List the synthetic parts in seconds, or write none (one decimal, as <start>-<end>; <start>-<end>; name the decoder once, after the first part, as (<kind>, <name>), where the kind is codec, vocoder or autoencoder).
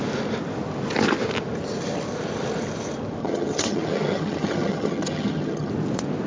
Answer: 3.2-5.7 (vocoder, HiFi-GAN)